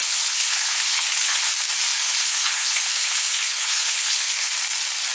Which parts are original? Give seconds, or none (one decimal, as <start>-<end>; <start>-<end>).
1.4-2.0; 4.5-5.1